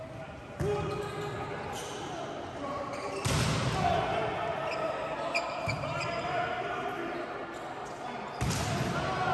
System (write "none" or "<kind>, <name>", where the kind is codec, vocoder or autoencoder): none